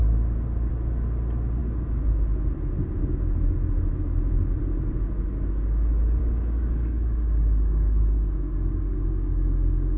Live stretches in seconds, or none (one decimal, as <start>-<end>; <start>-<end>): 0.7-6.2